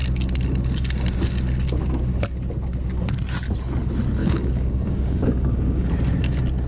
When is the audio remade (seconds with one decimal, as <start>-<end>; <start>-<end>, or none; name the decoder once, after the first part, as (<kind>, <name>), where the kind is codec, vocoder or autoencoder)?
4.2-5.9 (codec, DAC)